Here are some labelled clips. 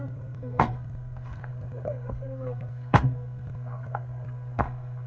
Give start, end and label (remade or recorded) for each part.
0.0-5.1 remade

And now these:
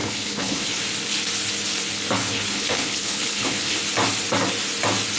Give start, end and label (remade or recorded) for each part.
0.0-0.8 remade; 0.8-2.2 recorded; 2.2-3.8 remade; 3.8-5.2 recorded